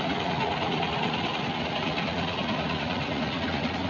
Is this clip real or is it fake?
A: fake